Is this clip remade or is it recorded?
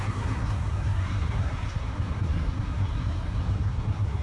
remade